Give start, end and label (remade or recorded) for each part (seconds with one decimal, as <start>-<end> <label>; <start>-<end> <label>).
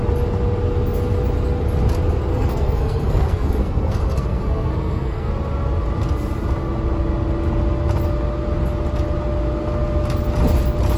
0.0-2.3 recorded; 2.3-5.3 remade; 5.3-11.0 recorded